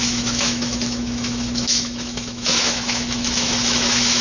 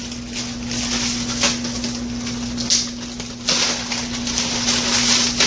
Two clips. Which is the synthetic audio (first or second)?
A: first